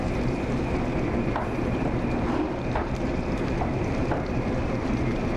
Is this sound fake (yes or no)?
yes